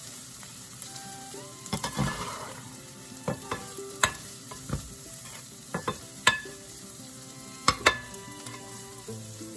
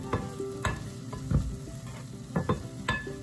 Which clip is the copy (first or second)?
first